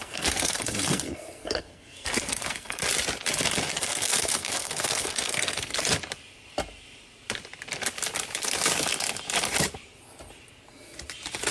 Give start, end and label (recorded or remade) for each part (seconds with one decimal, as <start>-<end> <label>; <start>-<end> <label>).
0.0-2.8 remade; 2.8-3.7 recorded; 3.7-5.8 remade; 5.8-11.5 recorded